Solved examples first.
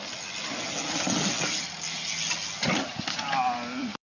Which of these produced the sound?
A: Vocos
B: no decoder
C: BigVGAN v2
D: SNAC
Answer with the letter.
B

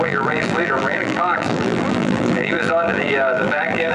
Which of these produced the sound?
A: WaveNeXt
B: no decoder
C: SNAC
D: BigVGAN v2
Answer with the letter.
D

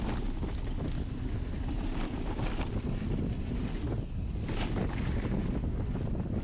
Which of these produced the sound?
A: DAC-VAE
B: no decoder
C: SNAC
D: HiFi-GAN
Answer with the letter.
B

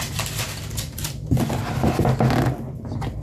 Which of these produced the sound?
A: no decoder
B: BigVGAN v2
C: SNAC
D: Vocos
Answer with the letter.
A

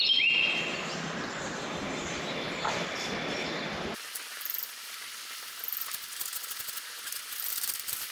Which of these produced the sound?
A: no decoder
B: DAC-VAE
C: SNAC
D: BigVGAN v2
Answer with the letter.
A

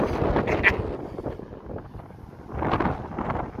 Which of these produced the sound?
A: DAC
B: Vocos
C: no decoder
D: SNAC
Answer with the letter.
C